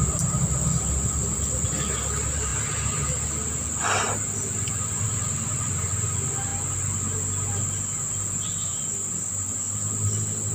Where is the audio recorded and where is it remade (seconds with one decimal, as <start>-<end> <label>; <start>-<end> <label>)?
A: 0.0-10.5 recorded

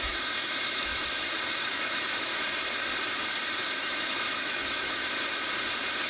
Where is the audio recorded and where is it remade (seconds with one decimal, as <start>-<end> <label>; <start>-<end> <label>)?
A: 0.0-0.9 remade; 0.9-1.6 recorded; 1.6-2.3 remade; 2.3-3.7 recorded; 3.7-5.0 remade; 5.0-6.1 recorded

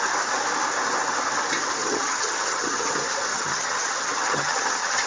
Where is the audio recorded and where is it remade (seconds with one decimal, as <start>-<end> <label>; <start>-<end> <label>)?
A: 0.0-1.8 recorded; 1.8-2.9 remade; 2.9-3.3 recorded; 3.3-5.1 remade

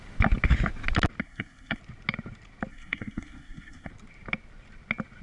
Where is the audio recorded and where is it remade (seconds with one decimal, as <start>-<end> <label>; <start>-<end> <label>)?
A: 0.0-1.2 recorded; 1.2-1.8 remade; 1.8-2.7 recorded; 2.7-3.9 remade; 3.9-5.2 recorded

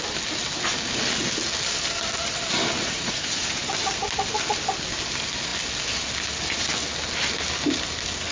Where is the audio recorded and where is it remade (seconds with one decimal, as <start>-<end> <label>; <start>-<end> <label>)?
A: 0.0-2.8 recorded; 2.8-3.7 remade; 3.7-8.3 recorded

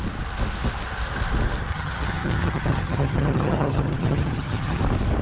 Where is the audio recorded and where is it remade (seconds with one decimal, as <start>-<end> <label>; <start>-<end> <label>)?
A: 0.0-1.7 recorded; 1.7-4.8 remade; 4.8-5.2 recorded